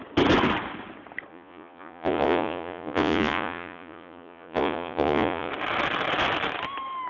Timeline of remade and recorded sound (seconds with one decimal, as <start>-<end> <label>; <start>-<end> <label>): 0.0-1.3 recorded; 1.3-5.5 remade; 5.5-7.1 recorded